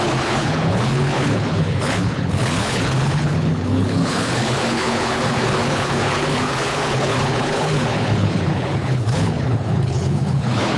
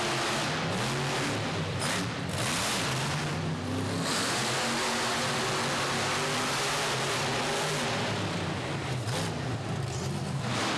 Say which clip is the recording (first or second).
second